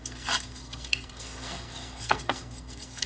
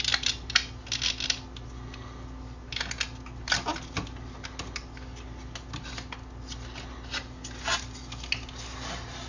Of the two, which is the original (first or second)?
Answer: second